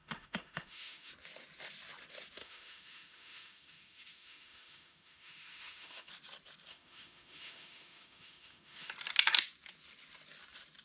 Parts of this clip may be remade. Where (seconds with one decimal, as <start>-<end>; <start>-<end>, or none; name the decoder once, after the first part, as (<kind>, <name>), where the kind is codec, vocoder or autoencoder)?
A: 0.0-1.1 (autoencoder, DAC-VAE); 2.4-6.1; 6.7-8.9